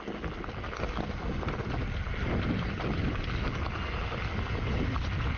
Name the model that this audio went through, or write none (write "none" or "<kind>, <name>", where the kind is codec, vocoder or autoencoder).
none